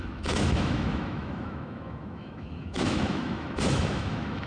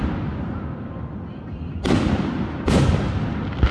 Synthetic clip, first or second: first